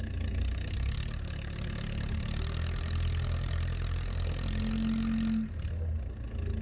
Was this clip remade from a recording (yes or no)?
no